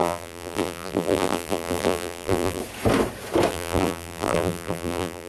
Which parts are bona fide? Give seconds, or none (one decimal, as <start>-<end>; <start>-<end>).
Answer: 2.6-3.5